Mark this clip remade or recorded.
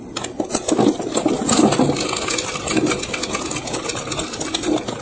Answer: recorded